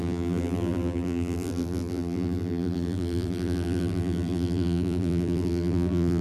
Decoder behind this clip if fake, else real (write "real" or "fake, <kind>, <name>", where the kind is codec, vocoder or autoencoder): fake, vocoder, BigVGAN v2